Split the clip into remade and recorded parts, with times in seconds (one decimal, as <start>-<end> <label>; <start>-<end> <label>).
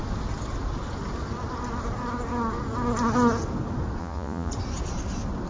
0.0-4.0 recorded; 4.0-4.5 remade; 4.5-5.5 recorded